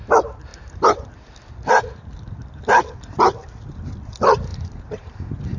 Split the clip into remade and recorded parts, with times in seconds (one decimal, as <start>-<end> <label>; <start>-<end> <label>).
0.0-4.5 recorded; 4.5-5.6 remade